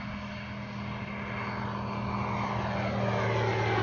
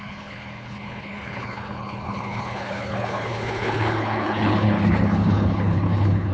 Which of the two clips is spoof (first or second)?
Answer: second